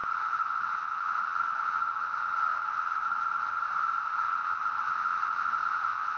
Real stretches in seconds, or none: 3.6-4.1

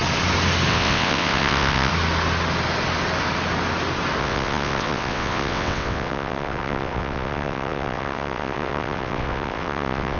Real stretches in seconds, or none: 0.0-0.7; 1.9-4.2